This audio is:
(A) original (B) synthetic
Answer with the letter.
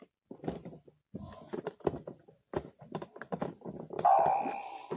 A